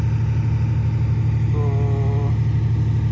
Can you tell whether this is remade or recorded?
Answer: recorded